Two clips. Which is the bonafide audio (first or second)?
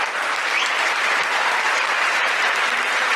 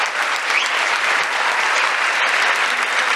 second